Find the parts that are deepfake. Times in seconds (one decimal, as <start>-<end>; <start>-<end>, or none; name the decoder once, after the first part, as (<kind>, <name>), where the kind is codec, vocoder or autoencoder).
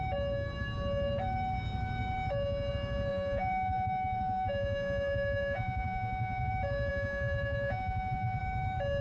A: 3.1-6.5 (vocoder, Vocos); 6.9-8.4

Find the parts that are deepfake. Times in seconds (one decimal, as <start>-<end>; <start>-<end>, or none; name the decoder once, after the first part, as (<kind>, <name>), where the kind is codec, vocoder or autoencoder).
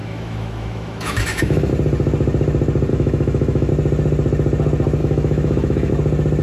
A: 0.0-1.7 (autoencoder, DAC-VAE); 2.9-3.7; 5.0-5.9